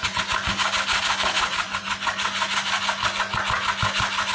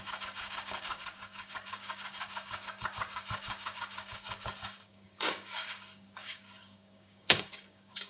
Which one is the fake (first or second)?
second